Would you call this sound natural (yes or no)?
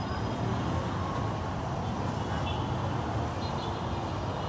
yes